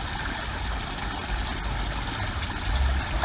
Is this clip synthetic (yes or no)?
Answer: no